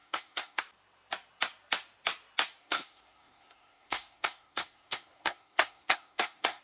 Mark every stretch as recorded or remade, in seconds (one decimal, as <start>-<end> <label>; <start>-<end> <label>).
0.0-0.6 remade; 0.6-2.6 recorded; 2.6-6.6 remade